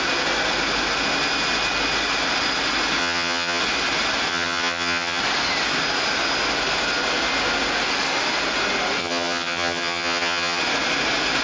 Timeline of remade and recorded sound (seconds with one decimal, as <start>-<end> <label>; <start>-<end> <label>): 0.0-3.0 recorded; 3.0-3.6 remade; 3.6-4.3 recorded; 4.3-5.2 remade; 5.2-9.0 recorded; 9.0-10.6 remade; 10.6-11.4 recorded